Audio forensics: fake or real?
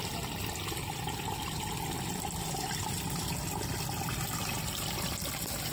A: real